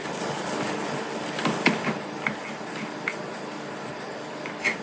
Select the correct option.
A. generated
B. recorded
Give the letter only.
B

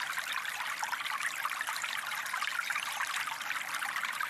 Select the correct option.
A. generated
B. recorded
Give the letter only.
A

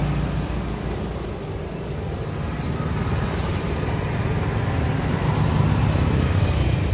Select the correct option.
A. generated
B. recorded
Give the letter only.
B